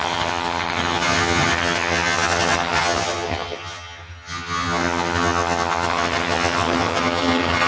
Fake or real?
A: fake